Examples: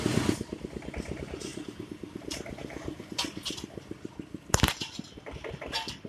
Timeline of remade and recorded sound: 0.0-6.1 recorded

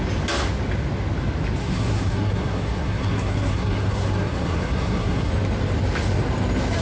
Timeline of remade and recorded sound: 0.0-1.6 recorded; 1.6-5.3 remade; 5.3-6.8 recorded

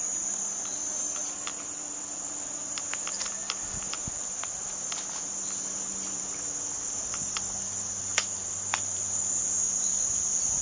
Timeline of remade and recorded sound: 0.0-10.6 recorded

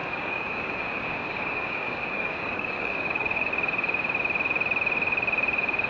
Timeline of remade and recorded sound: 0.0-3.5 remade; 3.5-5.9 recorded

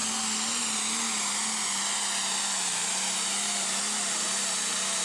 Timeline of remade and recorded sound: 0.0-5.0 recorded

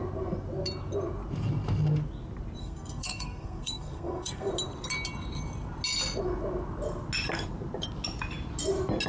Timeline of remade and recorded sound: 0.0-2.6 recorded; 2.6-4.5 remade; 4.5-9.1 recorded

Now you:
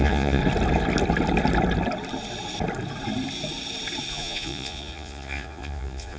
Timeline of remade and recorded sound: 0.0-0.4 remade; 0.4-4.1 recorded; 4.1-6.2 remade